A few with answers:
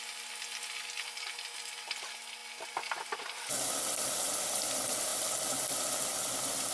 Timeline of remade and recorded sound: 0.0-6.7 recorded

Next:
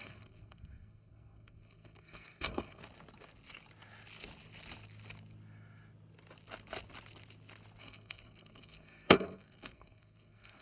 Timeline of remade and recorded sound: 0.0-2.8 remade; 2.8-7.8 recorded; 7.8-10.6 remade

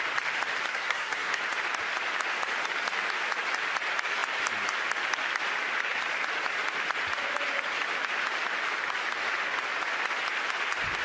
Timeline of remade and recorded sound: 0.0-0.7 recorded; 0.7-1.4 remade; 1.4-11.0 recorded

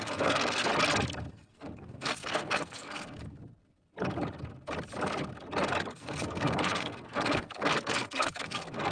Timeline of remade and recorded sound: 0.0-0.7 remade; 0.7-1.3 recorded; 1.3-3.4 remade; 3.4-5.9 recorded; 5.9-8.9 remade

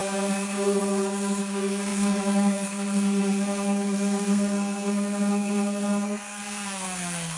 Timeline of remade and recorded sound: 0.0-7.4 remade

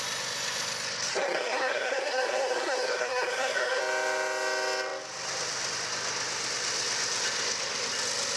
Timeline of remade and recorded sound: 0.0-1.1 recorded; 1.1-3.8 remade; 3.8-8.4 recorded

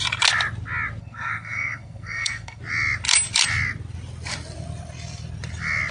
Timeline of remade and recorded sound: 0.0-1.0 recorded; 1.0-2.6 remade; 2.6-5.9 recorded

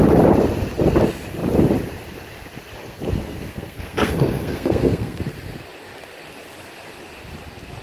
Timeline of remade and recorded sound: 0.0-2.8 recorded; 2.8-5.2 remade; 5.2-7.8 recorded